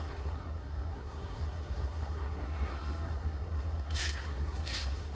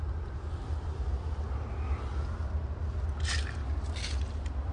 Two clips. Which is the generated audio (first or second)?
first